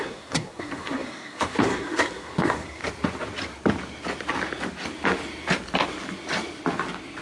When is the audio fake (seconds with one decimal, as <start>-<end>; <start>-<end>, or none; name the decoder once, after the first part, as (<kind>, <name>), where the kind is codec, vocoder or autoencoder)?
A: 0.0-2.8 (codec, SNAC)